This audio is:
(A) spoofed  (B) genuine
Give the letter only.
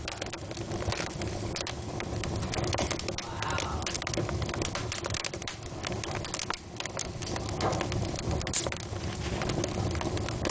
B